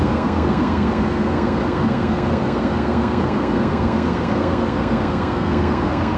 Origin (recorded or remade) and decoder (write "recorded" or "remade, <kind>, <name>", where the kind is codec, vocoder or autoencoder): remade, codec, SNAC